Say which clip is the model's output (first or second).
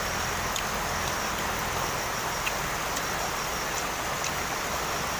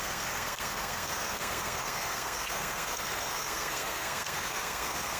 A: second